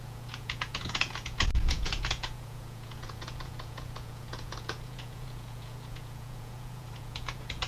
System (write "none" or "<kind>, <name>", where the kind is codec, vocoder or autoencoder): vocoder, Vocos